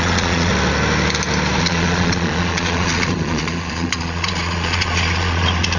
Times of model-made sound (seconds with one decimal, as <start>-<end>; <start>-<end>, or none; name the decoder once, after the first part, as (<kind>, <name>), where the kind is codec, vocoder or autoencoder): 0.0-0.5 (vocoder, Vocos); 1.6-5.8